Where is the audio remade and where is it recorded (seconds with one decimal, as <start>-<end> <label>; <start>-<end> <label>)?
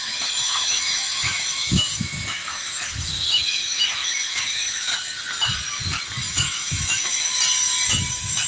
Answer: 0.0-4.9 remade; 4.9-6.3 recorded; 6.3-7.3 remade; 7.3-8.1 recorded; 8.1-8.5 remade